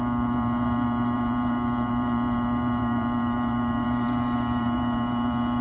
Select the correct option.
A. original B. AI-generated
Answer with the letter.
B